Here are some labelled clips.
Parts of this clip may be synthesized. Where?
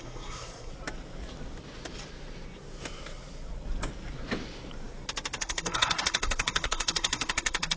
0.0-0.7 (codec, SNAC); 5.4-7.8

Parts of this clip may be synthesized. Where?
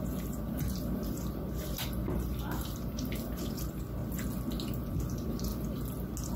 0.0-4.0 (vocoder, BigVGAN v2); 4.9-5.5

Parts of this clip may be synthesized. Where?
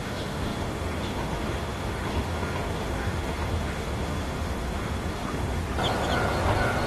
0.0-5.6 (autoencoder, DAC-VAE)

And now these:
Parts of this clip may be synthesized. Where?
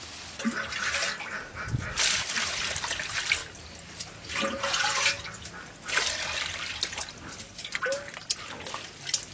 none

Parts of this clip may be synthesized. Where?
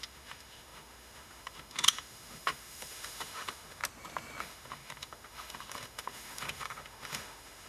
0.0-3.8 (autoencoder, DAC-VAE); 4.4-7.7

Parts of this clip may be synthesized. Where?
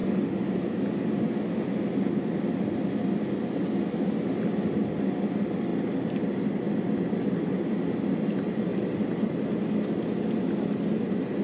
none